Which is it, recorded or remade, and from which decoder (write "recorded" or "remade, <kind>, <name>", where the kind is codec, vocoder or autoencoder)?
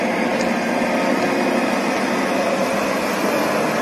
recorded